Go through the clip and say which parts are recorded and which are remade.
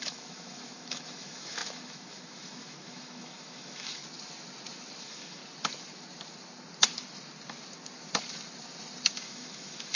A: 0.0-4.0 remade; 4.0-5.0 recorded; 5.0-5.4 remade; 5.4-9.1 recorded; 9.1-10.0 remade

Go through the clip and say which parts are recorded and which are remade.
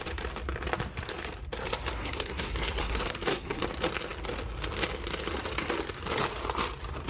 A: 0.0-2.0 recorded; 2.0-3.6 remade; 3.6-7.1 recorded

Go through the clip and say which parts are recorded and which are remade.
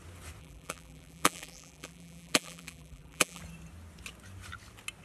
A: 0.0-0.4 recorded; 0.4-3.4 remade; 3.4-5.0 recorded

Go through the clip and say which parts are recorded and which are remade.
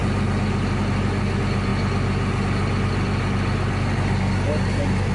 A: 0.0-5.1 recorded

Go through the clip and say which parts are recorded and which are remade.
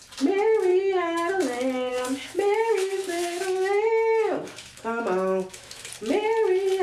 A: 0.0-0.7 recorded; 0.7-1.3 remade; 1.3-1.9 recorded; 1.9-5.9 remade; 5.9-6.8 recorded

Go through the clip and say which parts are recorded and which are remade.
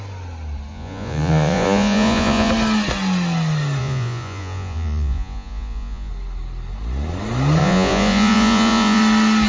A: 0.0-0.7 recorded; 0.7-2.5 remade; 2.5-3.8 recorded; 3.8-6.1 remade; 6.1-7.6 recorded; 7.6-9.0 remade; 9.0-9.5 recorded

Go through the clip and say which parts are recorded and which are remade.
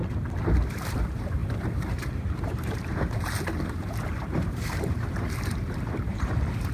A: 0.0-0.9 recorded; 0.9-6.7 remade